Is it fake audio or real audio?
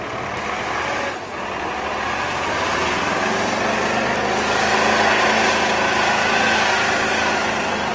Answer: real